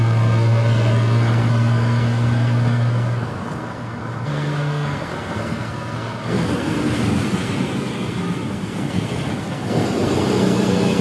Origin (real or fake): fake